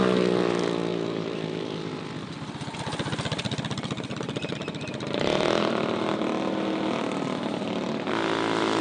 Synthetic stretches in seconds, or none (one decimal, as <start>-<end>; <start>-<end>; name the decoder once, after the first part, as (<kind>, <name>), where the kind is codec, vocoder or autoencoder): 0.9-2.0 (vocoder, BigVGAN v2)